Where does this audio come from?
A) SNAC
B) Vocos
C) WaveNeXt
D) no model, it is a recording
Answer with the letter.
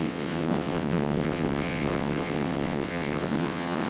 C